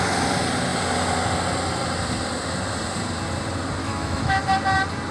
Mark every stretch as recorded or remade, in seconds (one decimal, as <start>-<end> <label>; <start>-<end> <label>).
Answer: 0.0-3.8 recorded; 3.8-4.4 remade; 4.4-5.1 recorded